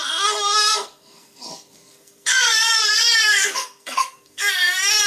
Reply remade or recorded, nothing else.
remade